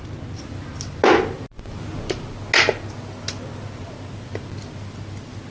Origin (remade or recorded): recorded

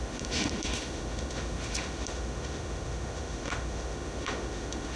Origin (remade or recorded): remade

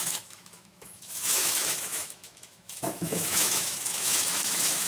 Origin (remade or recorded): remade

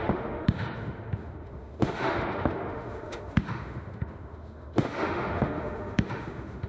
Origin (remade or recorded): remade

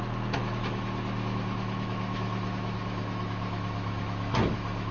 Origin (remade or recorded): remade